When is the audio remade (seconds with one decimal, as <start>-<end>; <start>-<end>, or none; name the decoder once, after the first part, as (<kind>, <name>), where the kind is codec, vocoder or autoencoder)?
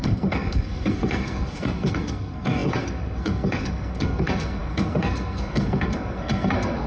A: 0.0-6.9 (codec, SNAC)